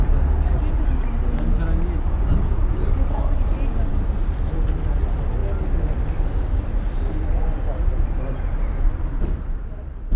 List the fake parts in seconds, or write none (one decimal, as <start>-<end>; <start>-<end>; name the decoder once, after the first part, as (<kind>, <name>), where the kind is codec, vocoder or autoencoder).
2.7-3.4 (vocoder, BigVGAN v2)

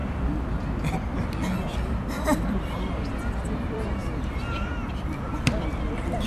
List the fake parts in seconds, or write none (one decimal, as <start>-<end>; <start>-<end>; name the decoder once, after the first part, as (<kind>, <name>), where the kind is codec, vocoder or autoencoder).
3.3-6.3 (vocoder, BigVGAN v2)